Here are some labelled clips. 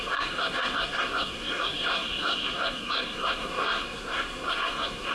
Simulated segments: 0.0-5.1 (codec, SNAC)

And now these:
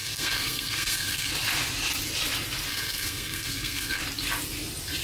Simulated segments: 0.0-1.3 (codec, SNAC); 2.7-4.0